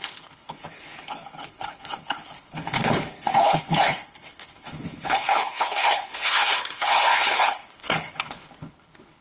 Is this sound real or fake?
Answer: fake